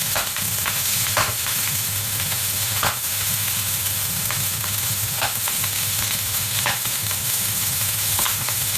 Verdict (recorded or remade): remade